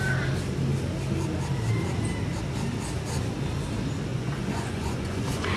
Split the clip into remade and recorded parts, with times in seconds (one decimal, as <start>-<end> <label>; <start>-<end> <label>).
0.0-4.1 recorded; 4.1-5.6 remade